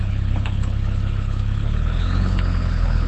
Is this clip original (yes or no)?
no